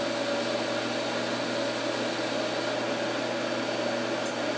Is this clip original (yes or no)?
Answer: yes